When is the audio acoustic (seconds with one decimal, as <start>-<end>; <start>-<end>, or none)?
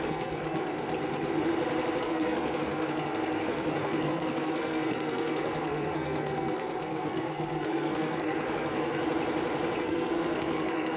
0.9-2.0; 9.0-9.8